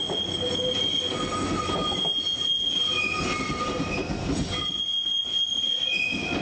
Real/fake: real